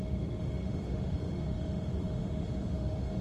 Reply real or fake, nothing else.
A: fake